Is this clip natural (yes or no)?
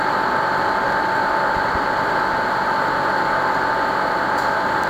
yes